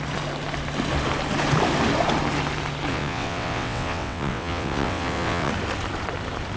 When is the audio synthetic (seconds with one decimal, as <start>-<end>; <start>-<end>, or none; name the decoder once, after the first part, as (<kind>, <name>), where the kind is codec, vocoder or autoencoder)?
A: 2.9-5.5 (vocoder, WaveNeXt)